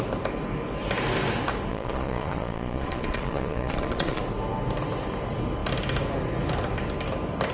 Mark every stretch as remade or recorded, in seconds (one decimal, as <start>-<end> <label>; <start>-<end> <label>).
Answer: 0.0-1.7 recorded; 1.7-4.2 remade; 4.2-7.5 recorded